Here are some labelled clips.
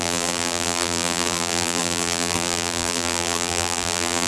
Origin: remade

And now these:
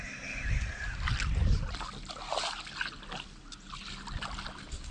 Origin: recorded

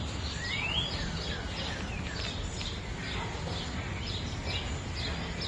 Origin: recorded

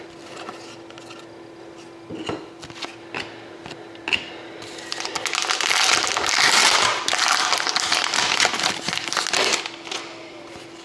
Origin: recorded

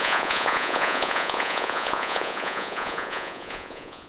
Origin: remade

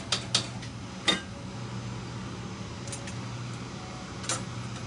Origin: recorded